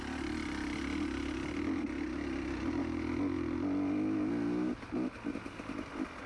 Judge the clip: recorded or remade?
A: recorded